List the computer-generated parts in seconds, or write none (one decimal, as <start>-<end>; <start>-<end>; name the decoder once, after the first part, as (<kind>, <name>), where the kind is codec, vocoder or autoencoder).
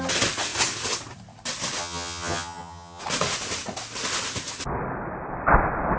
1.8-3.0 (vocoder, HiFi-GAN)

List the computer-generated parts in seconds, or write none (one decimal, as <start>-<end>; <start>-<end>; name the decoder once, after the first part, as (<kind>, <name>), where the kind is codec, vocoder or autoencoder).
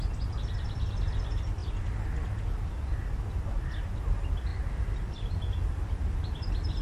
none